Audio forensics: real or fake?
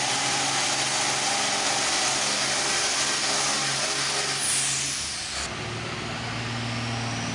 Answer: real